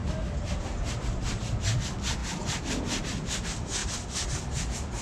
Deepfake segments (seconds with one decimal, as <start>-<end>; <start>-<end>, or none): 2.2-2.8; 3.8-5.0